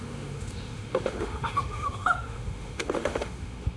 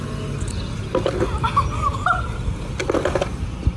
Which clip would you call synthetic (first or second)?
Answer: first